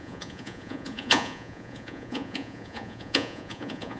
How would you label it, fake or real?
fake